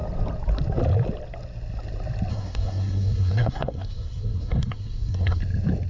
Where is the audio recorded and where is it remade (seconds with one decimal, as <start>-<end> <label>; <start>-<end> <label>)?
0.0-2.3 recorded; 2.3-5.4 remade; 5.4-5.9 recorded